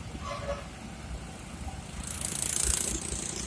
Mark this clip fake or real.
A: real